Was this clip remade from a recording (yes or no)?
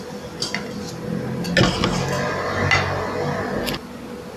no